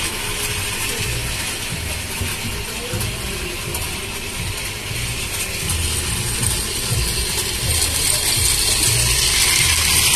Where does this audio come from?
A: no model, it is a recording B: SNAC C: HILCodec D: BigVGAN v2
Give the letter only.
A